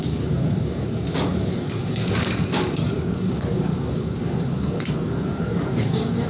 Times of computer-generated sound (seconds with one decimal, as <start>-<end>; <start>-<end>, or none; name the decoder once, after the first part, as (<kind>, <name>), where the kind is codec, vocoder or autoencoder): 0.0-6.3 (codec, DAC)